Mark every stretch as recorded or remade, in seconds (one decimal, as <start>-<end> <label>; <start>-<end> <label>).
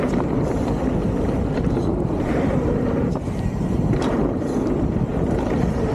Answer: 0.0-1.0 recorded; 1.0-4.5 remade; 4.5-5.9 recorded